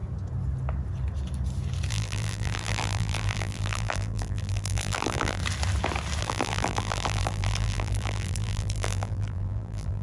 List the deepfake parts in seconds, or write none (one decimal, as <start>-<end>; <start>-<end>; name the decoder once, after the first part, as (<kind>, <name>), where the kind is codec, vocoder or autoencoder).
1.9-5.4 (vocoder, BigVGAN v2); 6.2-10.0